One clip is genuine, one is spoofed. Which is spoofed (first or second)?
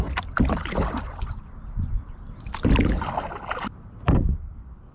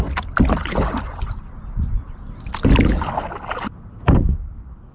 first